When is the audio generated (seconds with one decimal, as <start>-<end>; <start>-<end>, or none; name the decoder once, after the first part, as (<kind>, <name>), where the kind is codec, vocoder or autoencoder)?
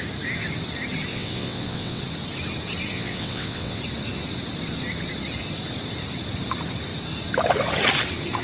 1.1-2.0 (vocoder, WaveNeXt); 2.9-3.8